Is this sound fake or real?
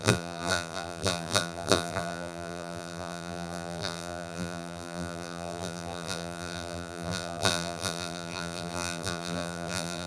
fake